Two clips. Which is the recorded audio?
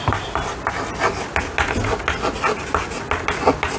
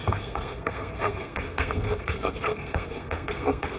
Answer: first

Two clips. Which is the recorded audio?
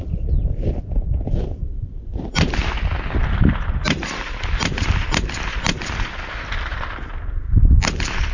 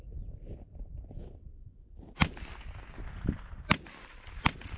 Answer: second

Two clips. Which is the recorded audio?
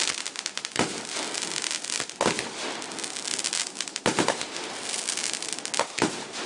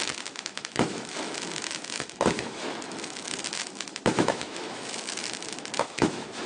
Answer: first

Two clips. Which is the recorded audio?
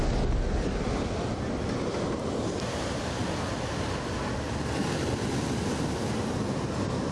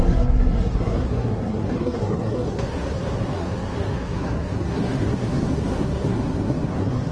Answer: first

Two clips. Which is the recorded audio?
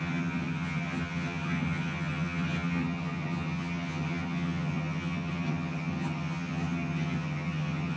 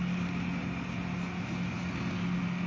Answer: second